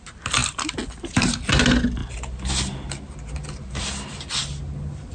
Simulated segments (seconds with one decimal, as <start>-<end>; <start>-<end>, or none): 0.4-1.6